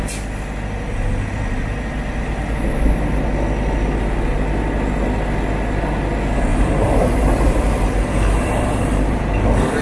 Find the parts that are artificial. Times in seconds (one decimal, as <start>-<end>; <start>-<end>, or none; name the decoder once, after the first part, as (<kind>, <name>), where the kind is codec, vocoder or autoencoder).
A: 6.5-9.2 (vocoder, BigVGAN v2)